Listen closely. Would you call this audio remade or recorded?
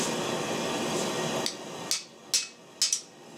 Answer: recorded